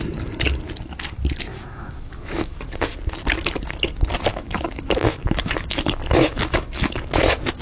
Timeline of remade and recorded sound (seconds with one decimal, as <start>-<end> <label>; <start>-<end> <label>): 0.0-1.5 recorded; 1.5-2.6 remade; 2.6-4.3 recorded; 4.3-6.8 remade; 6.8-7.6 recorded